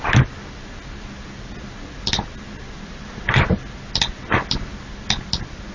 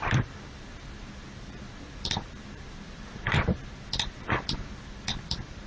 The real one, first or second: first